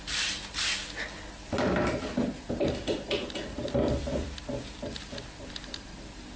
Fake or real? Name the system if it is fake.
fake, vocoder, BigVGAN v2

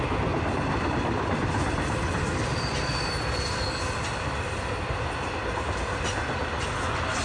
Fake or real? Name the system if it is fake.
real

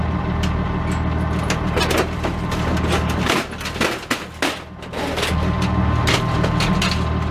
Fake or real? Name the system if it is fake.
real